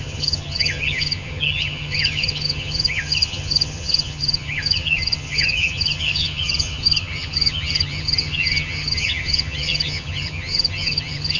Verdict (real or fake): fake